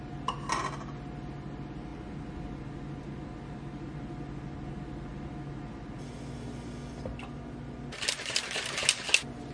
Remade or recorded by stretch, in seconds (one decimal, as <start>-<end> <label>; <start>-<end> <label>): 0.0-9.5 recorded

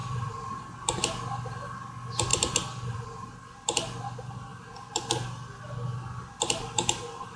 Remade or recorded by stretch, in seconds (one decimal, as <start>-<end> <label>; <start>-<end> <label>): 0.0-0.6 remade; 0.6-2.3 recorded; 2.3-3.3 remade; 3.3-7.4 recorded

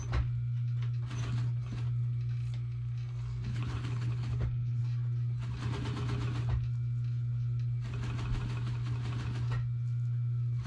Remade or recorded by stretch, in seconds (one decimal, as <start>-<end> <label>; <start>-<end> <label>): 0.0-3.5 recorded; 3.5-4.8 remade; 4.8-10.7 recorded

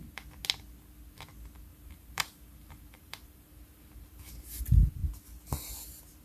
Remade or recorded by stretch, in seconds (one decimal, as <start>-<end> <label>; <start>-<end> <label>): 0.0-1.7 recorded; 1.7-4.6 remade; 4.6-6.2 recorded

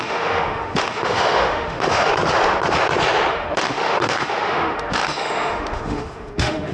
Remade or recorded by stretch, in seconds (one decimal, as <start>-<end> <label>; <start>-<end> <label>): 0.0-2.1 remade; 2.1-3.3 recorded; 3.3-6.7 remade

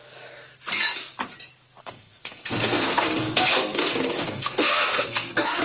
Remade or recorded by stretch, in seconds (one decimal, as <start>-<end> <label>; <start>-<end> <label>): 0.0-1.8 recorded; 1.8-5.6 remade